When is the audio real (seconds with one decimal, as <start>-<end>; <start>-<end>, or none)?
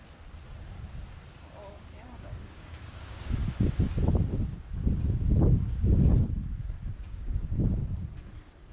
0.0-1.7; 3.4-6.9; 7.8-8.7